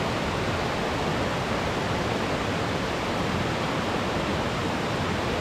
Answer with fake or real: real